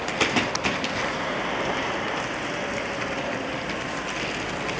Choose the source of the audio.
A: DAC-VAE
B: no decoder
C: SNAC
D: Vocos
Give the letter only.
B